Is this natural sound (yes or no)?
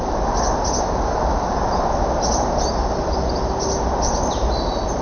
yes